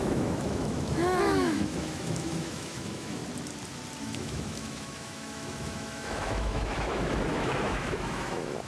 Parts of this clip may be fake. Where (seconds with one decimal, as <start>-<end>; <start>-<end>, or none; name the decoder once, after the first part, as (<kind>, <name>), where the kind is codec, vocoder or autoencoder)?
0.0-3.2 (autoencoder, DAC-VAE); 4.0-8.7